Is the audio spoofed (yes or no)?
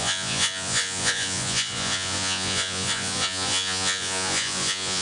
yes